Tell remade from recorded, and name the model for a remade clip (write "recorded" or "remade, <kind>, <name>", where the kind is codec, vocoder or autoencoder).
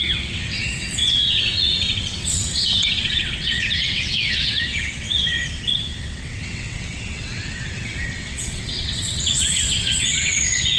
remade, vocoder, WaveNeXt